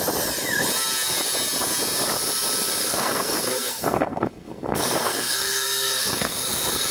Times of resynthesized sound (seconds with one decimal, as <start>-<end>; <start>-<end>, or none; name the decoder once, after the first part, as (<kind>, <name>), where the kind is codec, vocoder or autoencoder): 2.8-6.9 (codec, SNAC)